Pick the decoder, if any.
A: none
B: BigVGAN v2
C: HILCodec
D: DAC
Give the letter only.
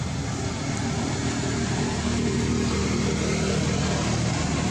A